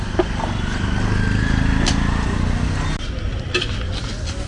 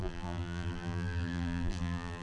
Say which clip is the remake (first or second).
second